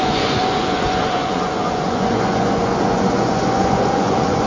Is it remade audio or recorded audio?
remade